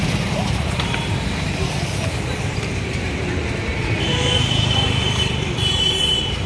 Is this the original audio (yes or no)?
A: no